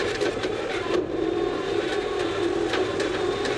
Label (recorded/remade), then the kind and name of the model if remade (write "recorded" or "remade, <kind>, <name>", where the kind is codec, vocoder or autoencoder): remade, vocoder, BigVGAN v2